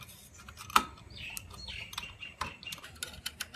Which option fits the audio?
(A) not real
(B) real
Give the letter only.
B